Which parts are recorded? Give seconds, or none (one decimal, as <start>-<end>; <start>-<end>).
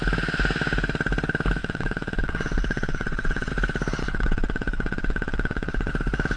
0.0-1.6; 3.5-4.0; 5.9-6.4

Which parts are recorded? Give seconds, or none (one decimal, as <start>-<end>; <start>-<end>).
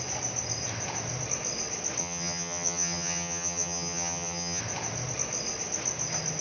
0.0-2.0; 4.6-6.4